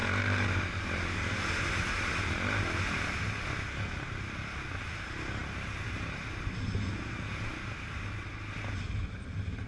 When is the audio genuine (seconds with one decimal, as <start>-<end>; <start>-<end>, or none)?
2.1-9.7